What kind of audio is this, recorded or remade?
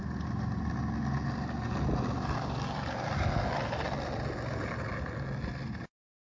recorded